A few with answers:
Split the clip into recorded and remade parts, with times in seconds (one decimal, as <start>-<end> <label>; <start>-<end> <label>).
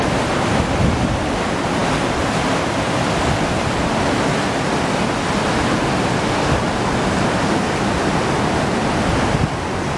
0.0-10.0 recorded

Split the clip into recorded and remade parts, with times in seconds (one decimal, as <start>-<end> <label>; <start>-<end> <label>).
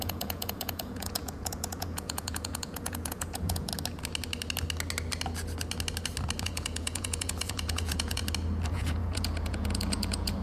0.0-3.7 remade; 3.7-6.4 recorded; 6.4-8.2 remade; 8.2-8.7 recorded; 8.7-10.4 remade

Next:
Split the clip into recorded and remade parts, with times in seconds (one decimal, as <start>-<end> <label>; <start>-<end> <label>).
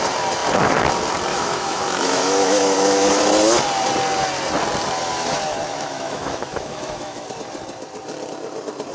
0.0-1.3 recorded; 1.3-3.2 remade; 3.2-5.7 recorded; 5.7-7.2 remade; 7.2-8.9 recorded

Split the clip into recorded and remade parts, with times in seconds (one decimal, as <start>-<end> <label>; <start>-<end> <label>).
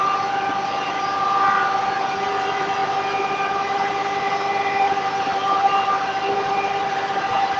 0.0-7.6 recorded